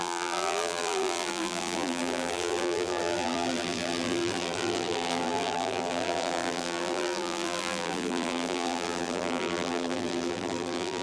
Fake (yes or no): yes